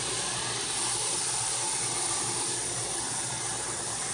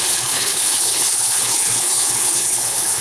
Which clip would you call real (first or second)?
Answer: first